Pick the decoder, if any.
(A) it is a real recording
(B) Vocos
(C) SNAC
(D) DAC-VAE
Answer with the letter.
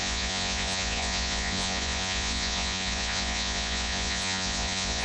B